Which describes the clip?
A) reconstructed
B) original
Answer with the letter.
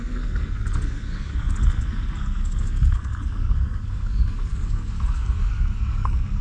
A